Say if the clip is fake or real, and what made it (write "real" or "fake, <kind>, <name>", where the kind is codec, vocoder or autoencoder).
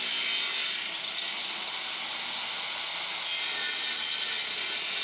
real